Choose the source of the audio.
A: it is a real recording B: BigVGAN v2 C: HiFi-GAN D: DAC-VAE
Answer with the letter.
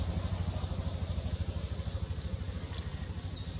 A